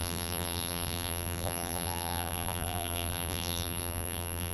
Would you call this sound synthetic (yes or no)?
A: yes